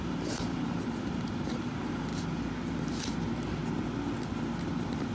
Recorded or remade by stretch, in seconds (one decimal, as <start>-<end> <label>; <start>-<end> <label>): 0.0-2.1 remade; 2.1-2.8 recorded; 2.8-3.6 remade; 3.6-4.6 recorded; 4.6-5.1 remade